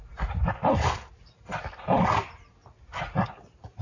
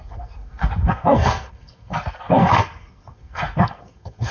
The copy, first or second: second